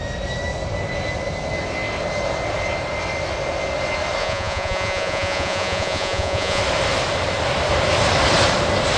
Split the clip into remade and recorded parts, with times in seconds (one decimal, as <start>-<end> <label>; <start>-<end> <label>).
0.0-4.2 recorded; 4.2-6.6 remade; 6.6-9.0 recorded